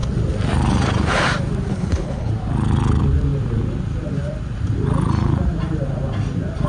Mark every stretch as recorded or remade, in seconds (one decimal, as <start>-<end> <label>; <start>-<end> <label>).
0.0-1.7 recorded; 1.7-2.3 remade; 2.3-6.7 recorded